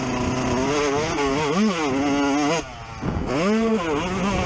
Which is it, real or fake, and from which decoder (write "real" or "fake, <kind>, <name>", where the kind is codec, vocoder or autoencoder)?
real